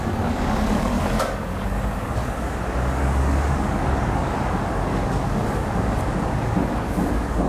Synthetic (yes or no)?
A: yes